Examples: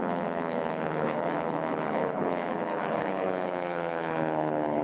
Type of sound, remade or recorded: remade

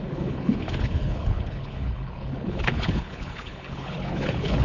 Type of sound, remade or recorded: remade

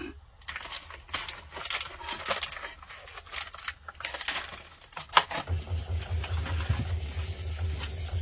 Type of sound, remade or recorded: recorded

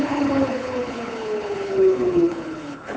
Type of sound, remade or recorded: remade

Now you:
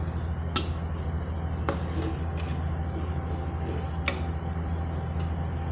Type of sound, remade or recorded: recorded